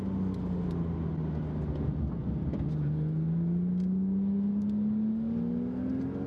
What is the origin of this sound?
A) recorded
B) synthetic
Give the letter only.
A